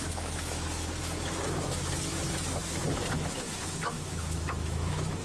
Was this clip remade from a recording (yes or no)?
yes